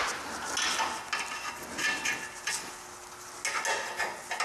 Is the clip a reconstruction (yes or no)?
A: no